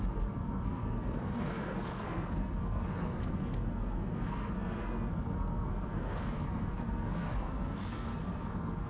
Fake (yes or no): yes